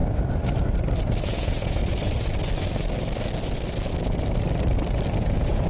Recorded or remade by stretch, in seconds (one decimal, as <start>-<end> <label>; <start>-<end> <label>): 0.0-1.2 recorded; 1.2-1.8 remade; 1.8-5.2 recorded; 5.2-5.7 remade